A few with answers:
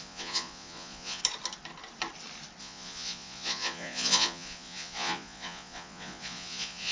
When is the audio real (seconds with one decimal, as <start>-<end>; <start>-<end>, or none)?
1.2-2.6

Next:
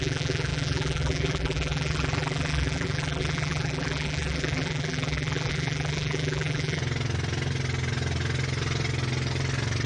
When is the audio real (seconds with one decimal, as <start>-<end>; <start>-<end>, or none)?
6.8-9.9

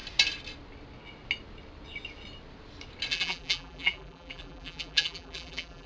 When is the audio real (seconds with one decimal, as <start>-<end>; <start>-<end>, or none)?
0.0-3.1

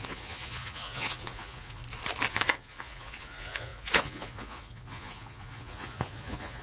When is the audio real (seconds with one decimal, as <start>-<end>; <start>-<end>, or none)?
1.8-2.3

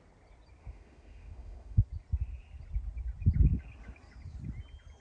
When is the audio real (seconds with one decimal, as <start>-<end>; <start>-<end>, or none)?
0.0-0.6; 1.8-5.0

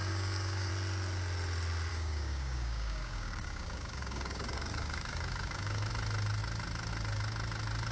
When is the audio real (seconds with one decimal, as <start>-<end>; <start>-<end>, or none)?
0.7-1.9; 5.9-7.9